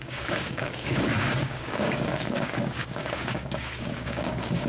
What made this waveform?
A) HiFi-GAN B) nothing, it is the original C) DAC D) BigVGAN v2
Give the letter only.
C